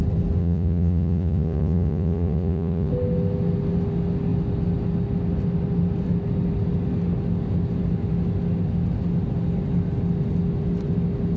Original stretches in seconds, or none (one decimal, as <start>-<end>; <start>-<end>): 0.0-0.4; 2.9-11.4